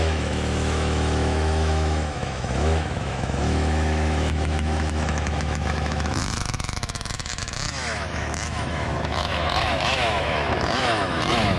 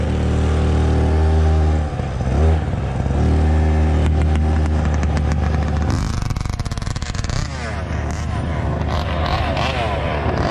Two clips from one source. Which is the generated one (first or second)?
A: first